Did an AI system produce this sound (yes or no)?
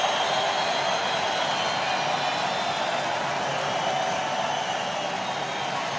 no